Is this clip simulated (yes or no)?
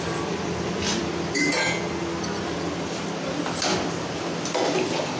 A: no